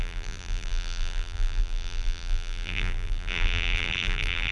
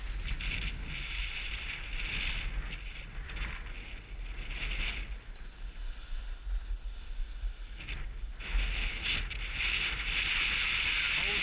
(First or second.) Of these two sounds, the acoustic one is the second